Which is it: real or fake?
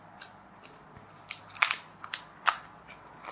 real